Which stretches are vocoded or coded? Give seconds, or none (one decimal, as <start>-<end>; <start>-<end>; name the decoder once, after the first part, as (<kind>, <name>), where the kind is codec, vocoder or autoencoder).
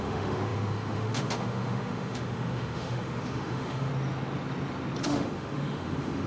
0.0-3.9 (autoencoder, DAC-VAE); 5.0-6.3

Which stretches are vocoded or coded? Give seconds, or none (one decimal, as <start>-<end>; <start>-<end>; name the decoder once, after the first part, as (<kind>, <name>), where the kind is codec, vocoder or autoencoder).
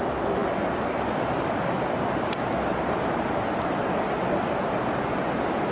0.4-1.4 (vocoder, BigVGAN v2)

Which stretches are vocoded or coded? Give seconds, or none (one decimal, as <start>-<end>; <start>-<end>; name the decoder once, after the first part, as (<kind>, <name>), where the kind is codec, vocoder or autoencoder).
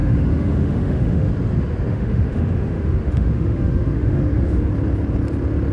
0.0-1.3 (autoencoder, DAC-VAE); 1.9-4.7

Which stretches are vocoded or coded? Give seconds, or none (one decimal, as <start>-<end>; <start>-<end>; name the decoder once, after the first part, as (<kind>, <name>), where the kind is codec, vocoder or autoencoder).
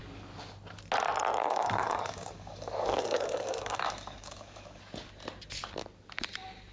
1.4-4.8 (codec, DAC)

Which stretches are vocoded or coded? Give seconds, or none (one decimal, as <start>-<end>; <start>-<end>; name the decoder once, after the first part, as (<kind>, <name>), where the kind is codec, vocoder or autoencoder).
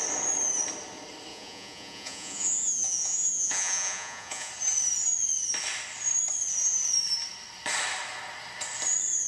1.3-4.5 (vocoder, Vocos)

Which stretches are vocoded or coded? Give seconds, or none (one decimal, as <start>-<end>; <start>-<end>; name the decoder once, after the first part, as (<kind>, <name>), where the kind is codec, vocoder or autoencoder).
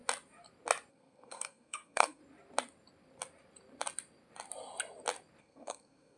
0.9-2.2 (codec, SNAC); 5.4-6.2